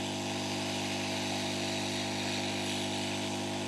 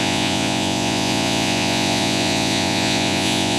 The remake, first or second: second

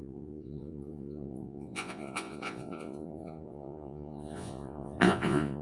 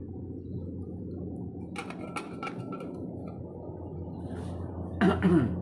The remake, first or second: first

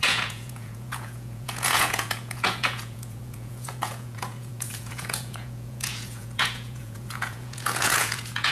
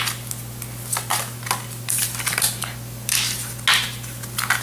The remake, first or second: first